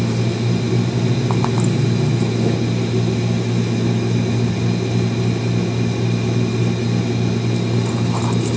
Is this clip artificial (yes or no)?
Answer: no